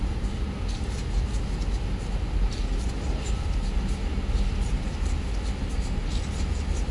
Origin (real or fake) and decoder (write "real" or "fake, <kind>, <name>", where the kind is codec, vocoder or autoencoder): real